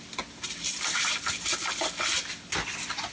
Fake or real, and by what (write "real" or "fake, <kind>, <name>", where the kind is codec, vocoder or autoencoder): real